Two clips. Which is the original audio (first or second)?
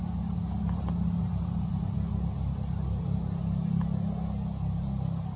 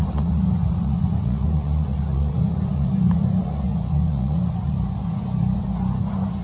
first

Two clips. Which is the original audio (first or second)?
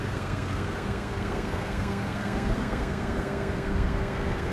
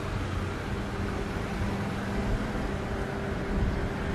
second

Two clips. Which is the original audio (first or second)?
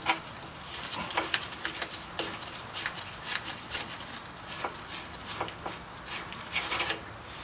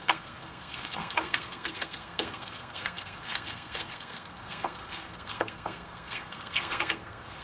first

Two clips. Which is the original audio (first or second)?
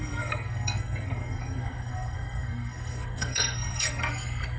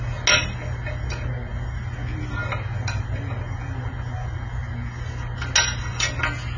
second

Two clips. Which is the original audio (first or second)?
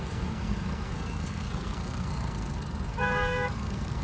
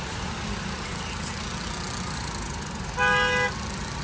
second